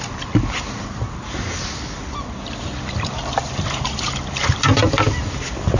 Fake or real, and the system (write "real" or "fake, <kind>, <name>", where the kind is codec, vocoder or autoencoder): real